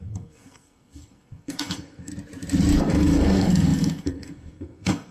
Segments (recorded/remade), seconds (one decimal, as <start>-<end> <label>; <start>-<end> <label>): 0.0-2.1 remade; 2.1-2.8 recorded; 2.8-5.1 remade